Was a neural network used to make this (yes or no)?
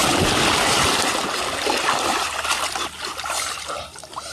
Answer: no